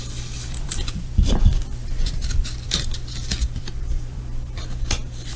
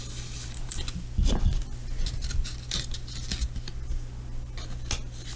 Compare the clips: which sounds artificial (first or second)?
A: first